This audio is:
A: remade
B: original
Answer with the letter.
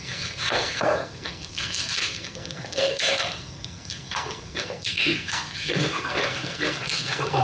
A